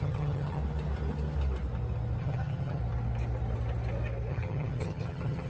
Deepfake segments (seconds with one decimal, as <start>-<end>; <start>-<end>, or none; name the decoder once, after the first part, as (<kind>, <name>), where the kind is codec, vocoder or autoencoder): 0.0-0.6 (vocoder, HiFi-GAN); 2.2-2.8; 4.3-5.5